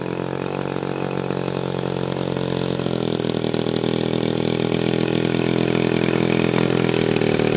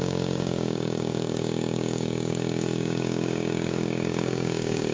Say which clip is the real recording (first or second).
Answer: first